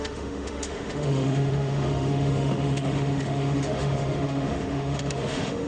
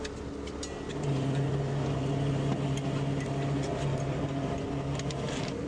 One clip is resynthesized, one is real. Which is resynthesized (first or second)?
first